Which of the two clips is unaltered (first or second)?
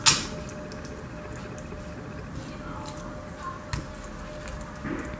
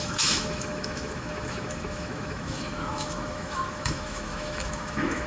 first